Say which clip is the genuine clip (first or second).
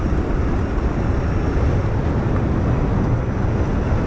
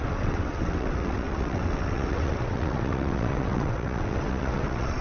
first